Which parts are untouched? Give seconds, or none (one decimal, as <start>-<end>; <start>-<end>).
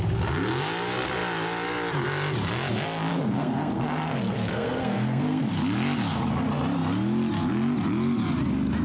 0.0-3.1; 5.5-8.8